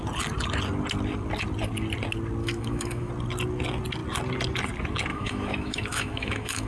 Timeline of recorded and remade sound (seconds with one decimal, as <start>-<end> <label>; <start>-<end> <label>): 0.0-2.4 recorded; 2.4-3.1 remade; 3.1-5.1 recorded; 5.1-6.7 remade